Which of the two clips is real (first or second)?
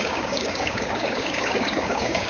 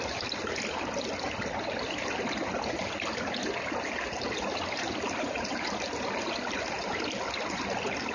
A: second